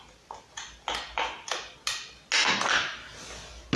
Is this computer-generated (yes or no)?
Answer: no